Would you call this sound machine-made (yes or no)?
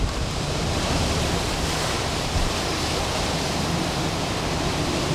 yes